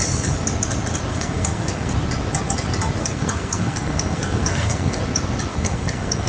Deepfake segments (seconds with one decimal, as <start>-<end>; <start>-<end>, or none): 1.1-1.9; 3.0-5.0; 5.5-6.3